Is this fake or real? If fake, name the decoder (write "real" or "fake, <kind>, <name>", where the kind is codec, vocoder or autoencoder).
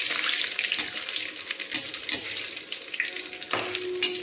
real